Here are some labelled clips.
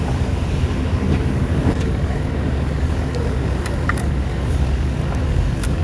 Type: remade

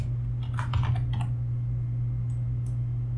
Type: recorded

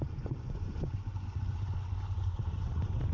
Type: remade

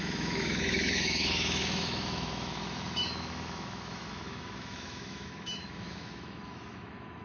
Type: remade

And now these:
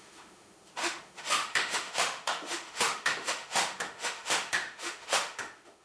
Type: remade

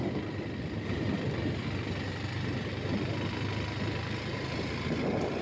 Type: recorded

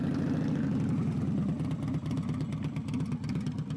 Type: recorded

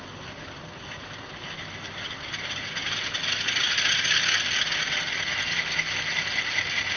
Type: recorded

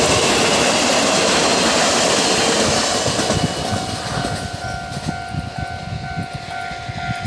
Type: recorded